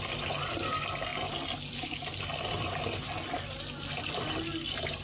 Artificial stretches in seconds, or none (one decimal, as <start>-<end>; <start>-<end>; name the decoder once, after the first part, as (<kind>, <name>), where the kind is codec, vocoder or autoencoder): none